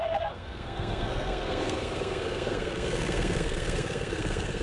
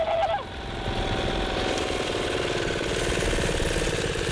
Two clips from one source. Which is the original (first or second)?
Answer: second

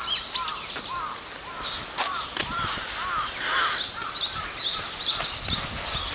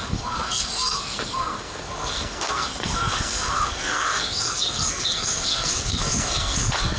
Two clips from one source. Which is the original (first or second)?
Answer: first